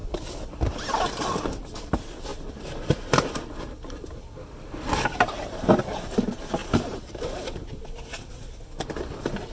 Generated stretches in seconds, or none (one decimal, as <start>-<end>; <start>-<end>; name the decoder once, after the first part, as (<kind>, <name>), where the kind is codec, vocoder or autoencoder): 0.0-2.3 (vocoder, BigVGAN v2); 3.3-9.5